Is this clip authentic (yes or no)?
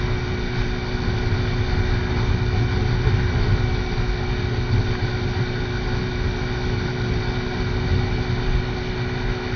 yes